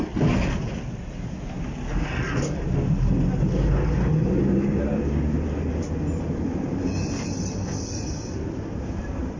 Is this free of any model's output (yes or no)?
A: yes